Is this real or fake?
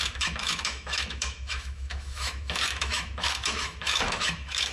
fake